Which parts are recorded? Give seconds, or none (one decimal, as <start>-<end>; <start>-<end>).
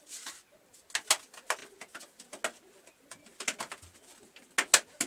0.0-5.1